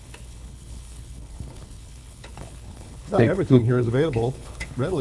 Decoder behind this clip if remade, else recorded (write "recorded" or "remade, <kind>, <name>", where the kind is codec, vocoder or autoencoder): remade, codec, HILCodec